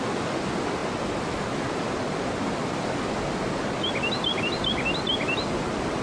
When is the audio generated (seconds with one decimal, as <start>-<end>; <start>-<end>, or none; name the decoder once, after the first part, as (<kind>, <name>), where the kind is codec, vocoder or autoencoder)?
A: none

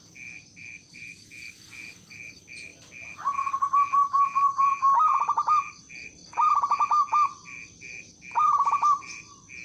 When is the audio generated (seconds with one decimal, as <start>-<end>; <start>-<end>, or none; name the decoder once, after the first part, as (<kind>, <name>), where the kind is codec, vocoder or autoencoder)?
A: none

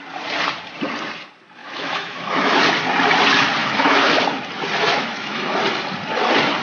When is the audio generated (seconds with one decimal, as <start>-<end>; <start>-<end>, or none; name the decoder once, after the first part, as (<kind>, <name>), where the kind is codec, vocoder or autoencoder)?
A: 1.6-2.6 (autoencoder, DAC-VAE); 3.6-4.2; 4.9-5.6

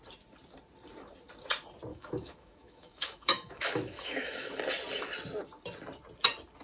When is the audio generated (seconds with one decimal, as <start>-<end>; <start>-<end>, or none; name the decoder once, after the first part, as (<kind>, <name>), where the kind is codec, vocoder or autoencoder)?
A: 1.9-4.5 (autoencoder, DAC-VAE)